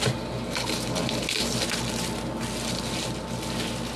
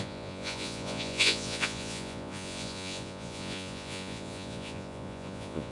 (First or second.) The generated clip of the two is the second